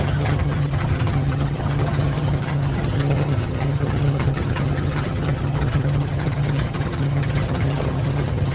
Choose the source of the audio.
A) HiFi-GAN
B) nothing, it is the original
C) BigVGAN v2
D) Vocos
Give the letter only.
A